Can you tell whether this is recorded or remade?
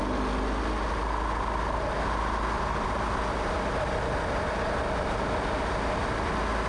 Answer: recorded